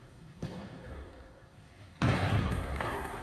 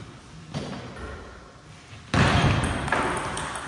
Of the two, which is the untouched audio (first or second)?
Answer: second